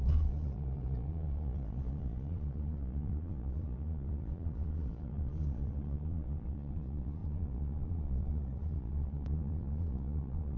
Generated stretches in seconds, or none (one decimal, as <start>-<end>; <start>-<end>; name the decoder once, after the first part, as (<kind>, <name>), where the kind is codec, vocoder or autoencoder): 0.0-10.6 (vocoder, Vocos)